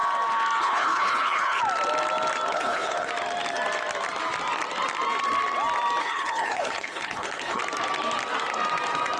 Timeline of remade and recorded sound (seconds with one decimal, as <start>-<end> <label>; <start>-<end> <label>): 0.0-0.6 recorded; 0.6-1.6 remade; 1.6-2.5 recorded; 2.5-3.1 remade; 3.1-6.0 recorded; 6.0-7.6 remade; 7.6-9.2 recorded